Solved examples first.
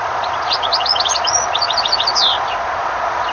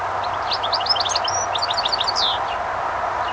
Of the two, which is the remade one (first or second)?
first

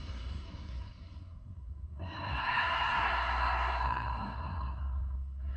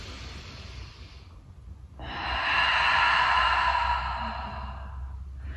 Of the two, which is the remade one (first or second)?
first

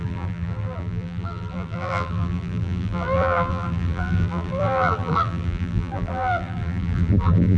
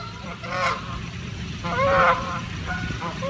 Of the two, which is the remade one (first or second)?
first